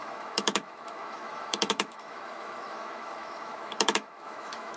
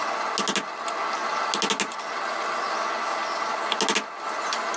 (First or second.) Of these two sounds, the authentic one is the second